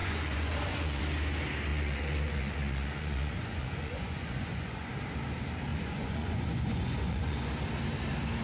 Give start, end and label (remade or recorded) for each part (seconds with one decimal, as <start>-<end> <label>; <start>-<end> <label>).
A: 0.0-1.0 remade; 1.0-1.7 recorded; 1.7-4.9 remade; 4.9-5.7 recorded; 5.7-7.5 remade; 7.5-8.4 recorded